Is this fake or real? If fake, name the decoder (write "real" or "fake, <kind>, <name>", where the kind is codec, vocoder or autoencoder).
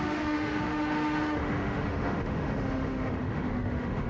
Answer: fake, autoencoder, DAC-VAE